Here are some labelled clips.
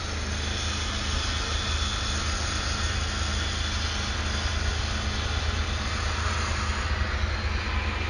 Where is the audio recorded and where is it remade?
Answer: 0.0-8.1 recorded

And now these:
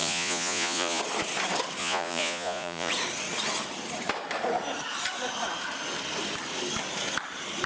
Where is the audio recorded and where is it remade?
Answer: 0.0-1.0 remade; 1.0-1.8 recorded; 1.8-2.9 remade; 2.9-7.7 recorded